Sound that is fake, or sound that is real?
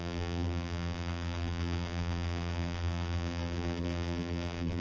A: fake